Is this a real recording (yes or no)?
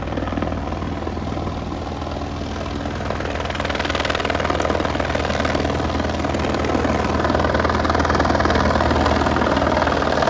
yes